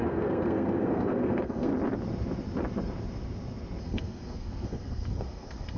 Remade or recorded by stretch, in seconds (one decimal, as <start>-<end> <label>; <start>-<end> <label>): 0.0-1.7 remade; 1.7-3.8 recorded; 3.8-5.8 remade